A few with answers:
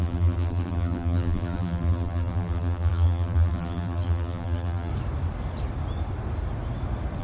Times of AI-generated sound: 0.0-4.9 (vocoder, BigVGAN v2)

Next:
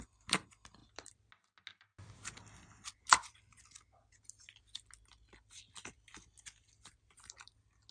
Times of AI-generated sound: none

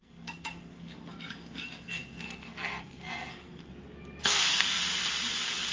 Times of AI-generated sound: 0.0-3.7 (codec, SNAC); 4.2-4.8

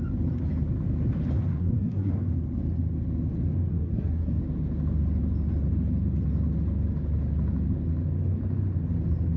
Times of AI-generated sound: 1.5-2.1 (codec, SNAC); 3.7-4.4

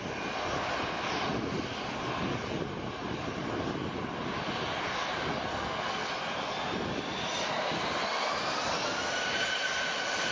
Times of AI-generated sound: 5.5-6.1 (codec, SNAC)

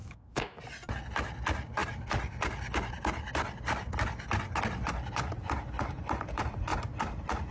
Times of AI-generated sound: 0.0-0.6 (autoencoder, DAC-VAE)

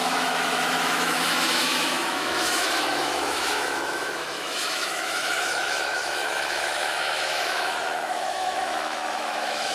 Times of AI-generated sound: 0.0-9.7 (autoencoder, DAC-VAE)

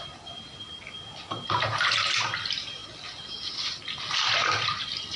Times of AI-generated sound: none